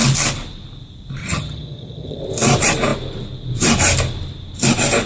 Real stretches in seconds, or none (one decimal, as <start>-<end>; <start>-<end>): 0.0-1.2; 2.2-5.1